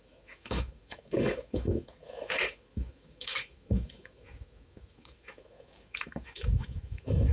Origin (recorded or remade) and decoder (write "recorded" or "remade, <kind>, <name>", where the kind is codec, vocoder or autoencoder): remade, autoencoder, DAC-VAE